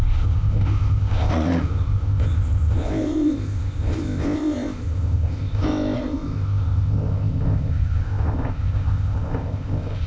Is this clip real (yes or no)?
no